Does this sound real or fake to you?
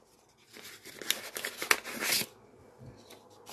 real